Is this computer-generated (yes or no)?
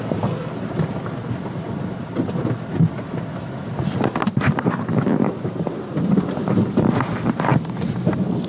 no